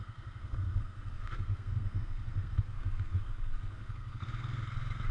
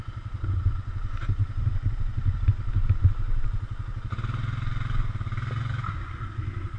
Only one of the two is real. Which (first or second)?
second